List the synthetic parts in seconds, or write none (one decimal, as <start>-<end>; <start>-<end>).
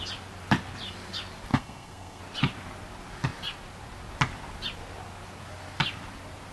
1.5-2.2